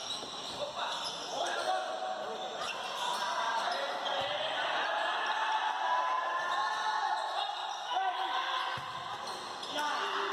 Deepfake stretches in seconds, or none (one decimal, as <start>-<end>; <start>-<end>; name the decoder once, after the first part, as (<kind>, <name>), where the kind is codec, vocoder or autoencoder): none

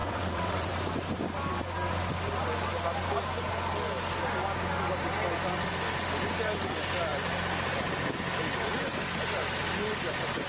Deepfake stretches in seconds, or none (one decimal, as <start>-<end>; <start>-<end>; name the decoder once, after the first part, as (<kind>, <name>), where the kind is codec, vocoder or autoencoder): 0.0-0.7 (vocoder, WaveNeXt)

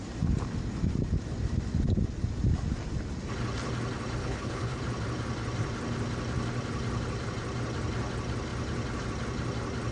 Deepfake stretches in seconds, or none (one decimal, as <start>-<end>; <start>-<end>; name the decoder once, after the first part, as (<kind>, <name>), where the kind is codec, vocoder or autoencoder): 4.2-4.8 (codec, HILCodec)

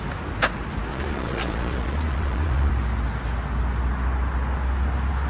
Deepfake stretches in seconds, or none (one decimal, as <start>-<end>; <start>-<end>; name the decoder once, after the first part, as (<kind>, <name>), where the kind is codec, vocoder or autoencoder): 0.9-2.7 (vocoder, Vocos)